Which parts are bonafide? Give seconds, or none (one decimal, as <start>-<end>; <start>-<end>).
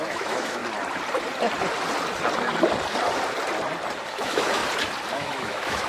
0.6-4.1; 4.6-5.1